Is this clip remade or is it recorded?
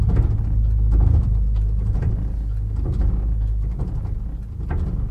recorded